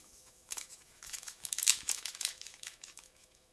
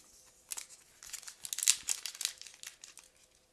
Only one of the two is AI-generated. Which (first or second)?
first